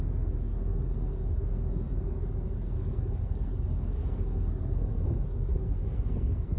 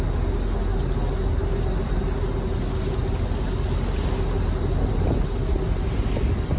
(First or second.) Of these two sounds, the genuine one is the second